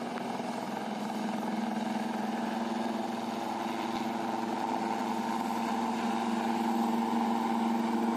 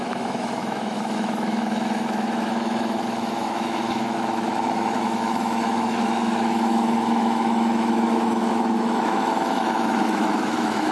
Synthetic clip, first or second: second